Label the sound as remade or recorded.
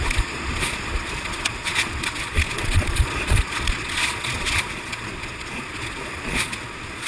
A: remade